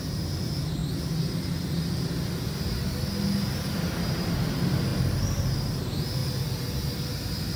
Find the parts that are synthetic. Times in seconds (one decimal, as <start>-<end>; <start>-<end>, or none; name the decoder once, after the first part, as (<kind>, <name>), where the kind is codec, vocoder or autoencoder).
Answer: 0.0-0.8 (vocoder, BigVGAN v2); 4.1-4.9; 5.8-6.2; 6.9-7.6